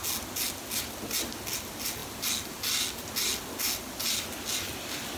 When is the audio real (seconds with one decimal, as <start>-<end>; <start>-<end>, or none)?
0.0-5.2